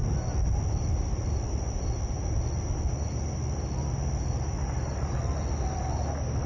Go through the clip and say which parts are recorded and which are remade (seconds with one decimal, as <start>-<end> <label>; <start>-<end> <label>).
0.0-6.5 recorded